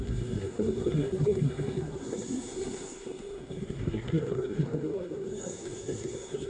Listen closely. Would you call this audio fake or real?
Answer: fake